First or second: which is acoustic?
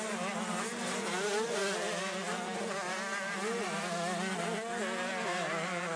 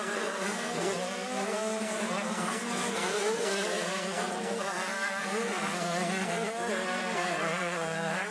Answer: first